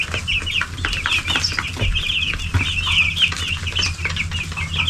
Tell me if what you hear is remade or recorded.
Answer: recorded